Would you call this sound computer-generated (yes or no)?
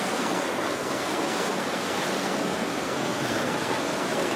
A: yes